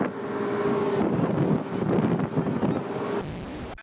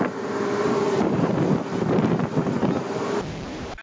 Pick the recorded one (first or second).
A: first